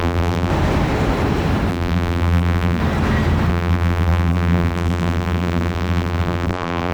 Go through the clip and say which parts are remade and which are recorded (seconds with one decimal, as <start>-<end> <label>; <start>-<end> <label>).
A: 0.0-0.5 remade; 0.5-1.7 recorded; 1.7-2.8 remade; 2.8-3.5 recorded; 3.5-6.9 remade

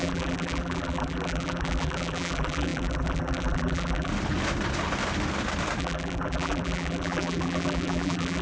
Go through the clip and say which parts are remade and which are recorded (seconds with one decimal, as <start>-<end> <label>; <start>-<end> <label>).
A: 0.0-4.1 remade; 4.1-5.8 recorded; 5.8-8.4 remade

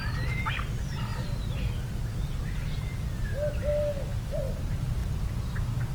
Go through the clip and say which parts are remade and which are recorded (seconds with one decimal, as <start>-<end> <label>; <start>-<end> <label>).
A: 0.0-5.9 recorded

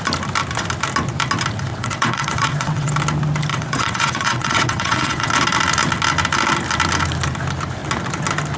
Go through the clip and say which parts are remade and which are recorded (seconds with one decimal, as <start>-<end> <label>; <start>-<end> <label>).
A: 0.0-1.7 recorded; 1.7-2.9 remade; 2.9-3.5 recorded; 3.5-5.3 remade; 5.3-8.6 recorded

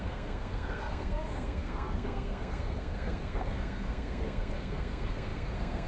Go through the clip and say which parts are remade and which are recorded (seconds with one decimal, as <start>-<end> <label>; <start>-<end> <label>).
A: 0.0-5.9 remade